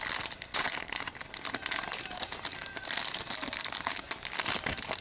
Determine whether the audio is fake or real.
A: real